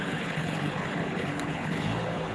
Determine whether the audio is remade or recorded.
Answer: remade